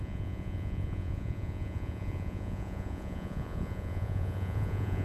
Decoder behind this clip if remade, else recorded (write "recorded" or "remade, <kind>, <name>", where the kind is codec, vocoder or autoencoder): remade, vocoder, Vocos